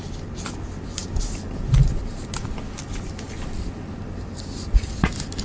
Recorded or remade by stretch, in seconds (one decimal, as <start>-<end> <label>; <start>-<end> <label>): 0.0-5.4 recorded

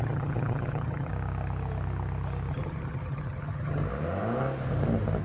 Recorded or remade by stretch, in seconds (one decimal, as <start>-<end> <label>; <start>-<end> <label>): 0.0-1.1 remade; 1.1-2.5 recorded; 2.5-3.8 remade; 3.8-5.2 recorded

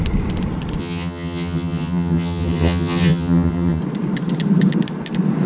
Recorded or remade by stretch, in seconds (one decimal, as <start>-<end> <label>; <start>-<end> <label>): 0.0-0.8 recorded; 0.8-3.8 remade; 3.8-5.5 recorded

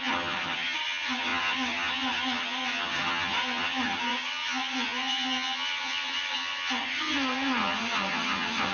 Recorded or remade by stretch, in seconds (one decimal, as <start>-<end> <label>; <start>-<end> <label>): 0.0-8.7 remade

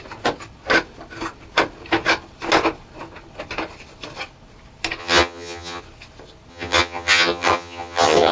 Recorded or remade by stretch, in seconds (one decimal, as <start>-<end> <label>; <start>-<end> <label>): 0.0-5.0 recorded; 5.0-5.8 remade; 5.8-6.5 recorded; 6.5-8.3 remade

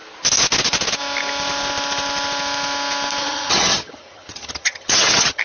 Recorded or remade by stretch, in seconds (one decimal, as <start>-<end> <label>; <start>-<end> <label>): 0.0-3.2 recorded; 3.2-5.4 remade

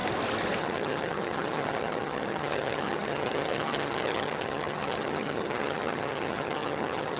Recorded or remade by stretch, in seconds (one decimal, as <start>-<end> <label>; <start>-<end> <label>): 0.0-0.6 recorded; 0.6-7.2 remade

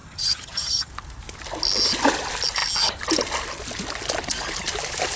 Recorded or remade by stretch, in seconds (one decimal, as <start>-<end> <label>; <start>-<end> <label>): 0.0-0.9 remade; 0.9-5.2 recorded